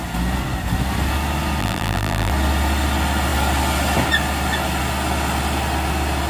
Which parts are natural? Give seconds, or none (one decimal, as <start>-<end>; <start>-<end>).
0.0-1.6; 2.3-6.3